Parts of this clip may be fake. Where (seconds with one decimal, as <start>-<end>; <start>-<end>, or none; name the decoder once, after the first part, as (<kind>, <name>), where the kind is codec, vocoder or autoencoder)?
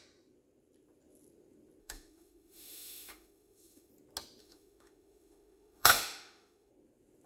1.8-3.9 (autoencoder, DAC-VAE); 4.4-6.7